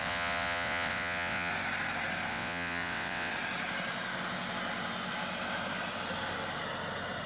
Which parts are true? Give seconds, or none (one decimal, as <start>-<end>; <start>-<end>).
1.5-2.3; 3.3-7.3